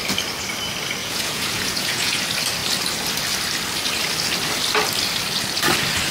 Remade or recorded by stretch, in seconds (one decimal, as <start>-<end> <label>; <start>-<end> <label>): 0.0-1.0 recorded; 1.0-2.2 remade; 2.2-6.1 recorded